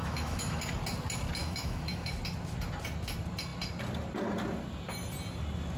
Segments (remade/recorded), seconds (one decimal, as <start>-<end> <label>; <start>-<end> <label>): 0.0-0.6 remade; 0.6-1.4 recorded; 1.4-2.1 remade; 2.1-5.8 recorded